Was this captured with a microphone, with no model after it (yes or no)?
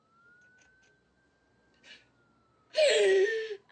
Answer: yes